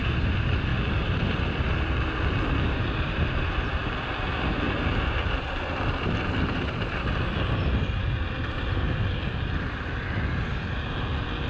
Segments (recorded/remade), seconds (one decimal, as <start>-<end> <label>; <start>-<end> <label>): 0.0-11.5 recorded